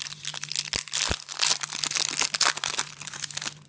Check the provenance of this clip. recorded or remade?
recorded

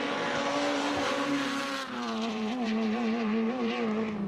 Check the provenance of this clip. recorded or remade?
remade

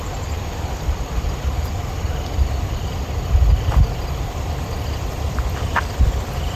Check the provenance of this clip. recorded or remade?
remade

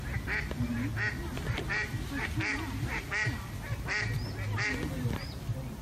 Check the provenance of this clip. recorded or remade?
recorded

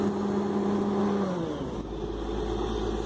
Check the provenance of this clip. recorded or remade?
recorded